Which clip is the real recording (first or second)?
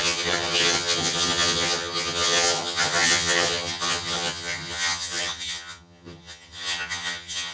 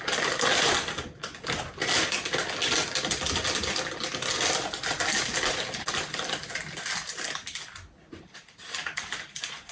second